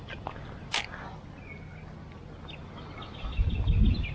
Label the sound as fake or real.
real